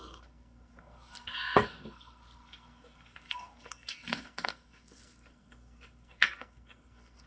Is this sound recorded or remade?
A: remade